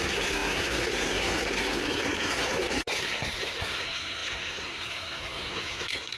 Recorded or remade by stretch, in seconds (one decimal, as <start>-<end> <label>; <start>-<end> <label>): 0.0-6.2 remade